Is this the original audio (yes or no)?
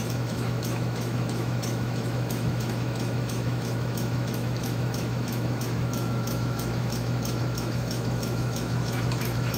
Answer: no